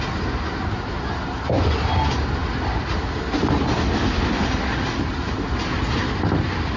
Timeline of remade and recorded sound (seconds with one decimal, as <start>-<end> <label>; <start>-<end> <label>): 0.0-6.8 recorded